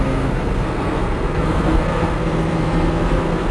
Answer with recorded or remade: remade